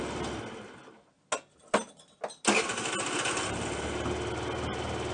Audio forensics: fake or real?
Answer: real